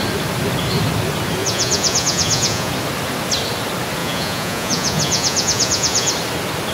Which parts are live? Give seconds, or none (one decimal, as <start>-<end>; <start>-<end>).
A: 0.0-1.4; 2.7-4.0; 6.1-6.7